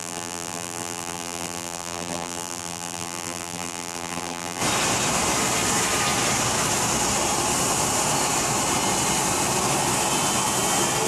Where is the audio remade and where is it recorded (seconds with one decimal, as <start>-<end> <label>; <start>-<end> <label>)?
0.0-4.6 remade; 4.6-11.1 recorded